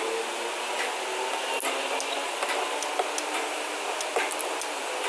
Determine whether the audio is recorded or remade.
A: recorded